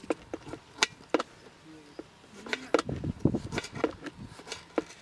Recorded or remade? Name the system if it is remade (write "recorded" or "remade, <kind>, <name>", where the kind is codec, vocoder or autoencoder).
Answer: recorded